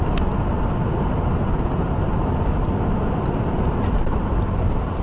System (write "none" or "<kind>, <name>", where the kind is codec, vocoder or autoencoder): none